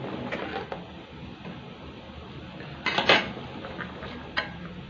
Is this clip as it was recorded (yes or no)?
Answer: yes